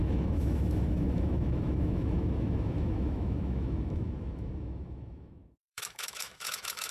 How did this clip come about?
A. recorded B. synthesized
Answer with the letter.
B